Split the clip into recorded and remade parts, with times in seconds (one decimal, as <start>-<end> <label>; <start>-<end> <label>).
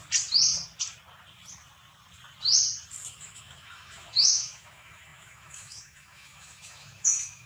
0.0-3.2 recorded; 3.2-7.5 remade